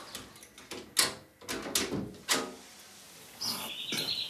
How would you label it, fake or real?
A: real